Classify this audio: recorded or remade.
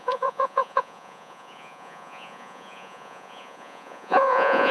remade